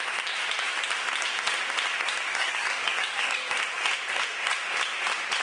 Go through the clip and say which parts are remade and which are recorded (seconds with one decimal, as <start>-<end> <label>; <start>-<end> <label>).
0.0-2.3 recorded; 2.3-3.5 remade; 3.5-5.4 recorded